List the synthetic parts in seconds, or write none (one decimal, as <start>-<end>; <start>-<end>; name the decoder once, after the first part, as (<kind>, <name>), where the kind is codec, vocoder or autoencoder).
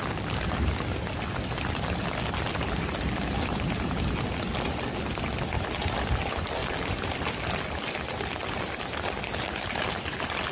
none